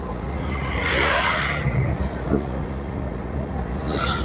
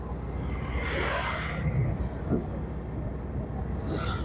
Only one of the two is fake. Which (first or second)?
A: first